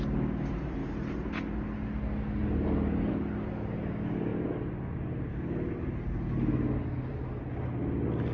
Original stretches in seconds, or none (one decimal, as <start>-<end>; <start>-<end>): 0.0-8.3